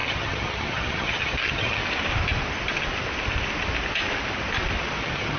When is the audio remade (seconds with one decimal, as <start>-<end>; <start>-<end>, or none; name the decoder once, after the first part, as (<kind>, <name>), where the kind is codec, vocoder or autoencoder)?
0.0-1.8 (vocoder, HiFi-GAN); 5.0-5.4